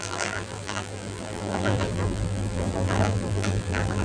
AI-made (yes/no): yes